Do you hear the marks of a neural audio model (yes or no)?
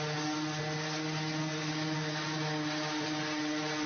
no